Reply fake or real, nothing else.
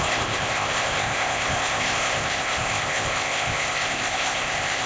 fake